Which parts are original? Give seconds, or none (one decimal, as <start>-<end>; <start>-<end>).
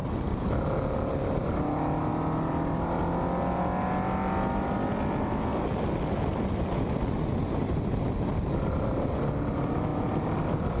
0.7-9.9